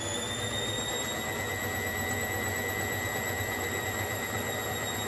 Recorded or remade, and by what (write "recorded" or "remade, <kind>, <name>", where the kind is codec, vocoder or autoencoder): recorded